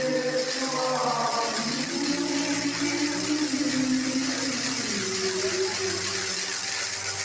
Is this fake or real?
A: real